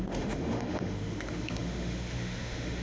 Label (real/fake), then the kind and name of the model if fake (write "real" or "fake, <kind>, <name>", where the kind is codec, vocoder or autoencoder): fake, autoencoder, DAC-VAE